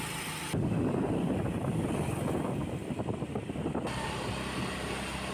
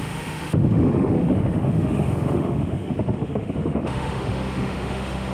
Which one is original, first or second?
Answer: first